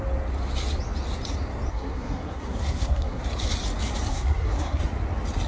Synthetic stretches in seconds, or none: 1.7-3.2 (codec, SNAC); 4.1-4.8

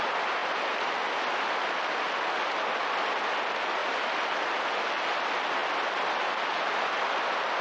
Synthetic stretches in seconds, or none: none

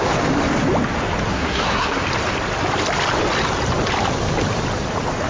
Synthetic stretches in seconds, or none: 1.3-2.0 (codec, SNAC)